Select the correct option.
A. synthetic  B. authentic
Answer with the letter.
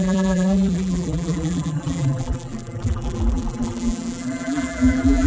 A